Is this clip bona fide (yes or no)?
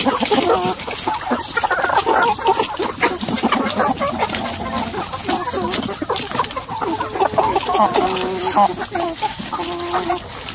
yes